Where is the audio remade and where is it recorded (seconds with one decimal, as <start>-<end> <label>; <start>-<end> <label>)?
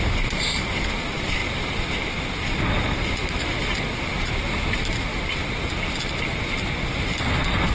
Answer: 0.0-1.4 remade; 1.4-4.2 recorded; 4.2-7.7 remade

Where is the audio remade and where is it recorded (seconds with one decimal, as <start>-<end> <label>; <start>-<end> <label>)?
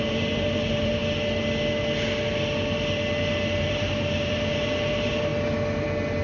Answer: 0.0-1.0 remade; 1.0-3.6 recorded; 3.6-5.3 remade; 5.3-6.2 recorded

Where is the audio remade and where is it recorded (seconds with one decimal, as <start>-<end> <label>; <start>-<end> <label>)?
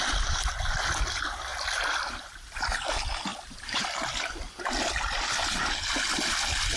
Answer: 0.0-1.5 recorded; 1.5-2.3 remade; 2.3-6.8 recorded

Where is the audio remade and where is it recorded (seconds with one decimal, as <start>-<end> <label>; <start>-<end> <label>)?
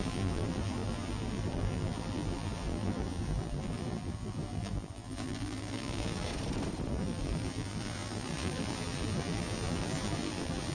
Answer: 0.0-6.3 remade; 6.3-6.9 recorded; 6.9-10.7 remade